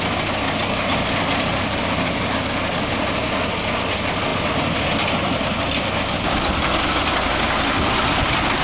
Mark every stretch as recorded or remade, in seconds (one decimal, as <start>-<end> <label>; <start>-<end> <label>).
0.0-8.6 recorded